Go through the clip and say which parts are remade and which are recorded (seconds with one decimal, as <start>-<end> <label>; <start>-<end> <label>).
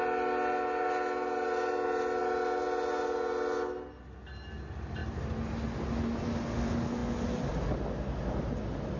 0.0-9.0 recorded